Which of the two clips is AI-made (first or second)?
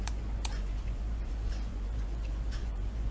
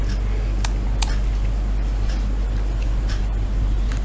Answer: first